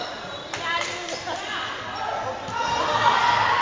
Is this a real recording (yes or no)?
yes